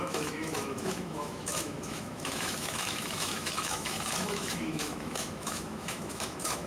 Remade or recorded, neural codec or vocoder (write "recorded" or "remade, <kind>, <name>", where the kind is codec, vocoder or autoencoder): remade, autoencoder, DAC-VAE